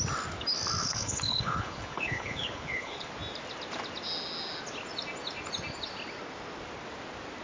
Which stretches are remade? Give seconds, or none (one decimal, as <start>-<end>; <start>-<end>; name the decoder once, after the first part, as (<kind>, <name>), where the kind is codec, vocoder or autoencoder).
0.8-3.1 (codec, HILCodec)